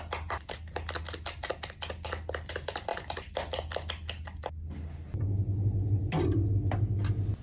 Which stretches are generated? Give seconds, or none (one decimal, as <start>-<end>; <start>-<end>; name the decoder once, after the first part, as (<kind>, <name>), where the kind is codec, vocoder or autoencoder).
none